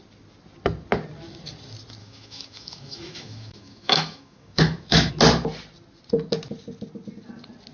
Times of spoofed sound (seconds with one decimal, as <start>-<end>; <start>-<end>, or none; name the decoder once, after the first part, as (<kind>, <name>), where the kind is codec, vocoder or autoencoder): 2.0-5.1 (autoencoder, DAC-VAE)